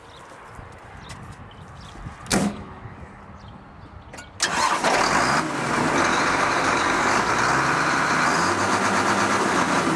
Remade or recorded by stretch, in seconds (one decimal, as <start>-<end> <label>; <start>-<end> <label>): 0.0-2.3 recorded; 2.3-3.2 remade; 3.2-6.1 recorded; 6.1-7.3 remade; 7.3-10.0 recorded